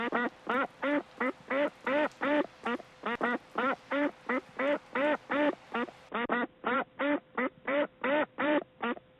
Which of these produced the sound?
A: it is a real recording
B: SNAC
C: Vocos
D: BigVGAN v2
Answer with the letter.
D